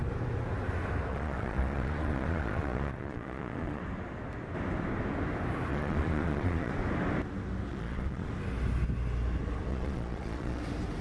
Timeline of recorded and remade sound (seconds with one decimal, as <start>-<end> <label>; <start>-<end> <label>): 0.0-1.1 recorded; 1.1-3.8 remade; 3.8-5.7 recorded; 5.7-6.7 remade; 6.7-7.7 recorded; 7.7-8.3 remade; 8.3-9.7 recorded; 9.7-10.6 remade; 10.6-11.0 recorded